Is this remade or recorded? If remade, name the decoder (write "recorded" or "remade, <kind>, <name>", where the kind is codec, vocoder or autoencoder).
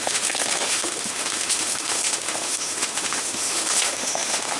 remade, autoencoder, DAC-VAE